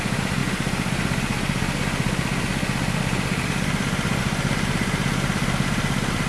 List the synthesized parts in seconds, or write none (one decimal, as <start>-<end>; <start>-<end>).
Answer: none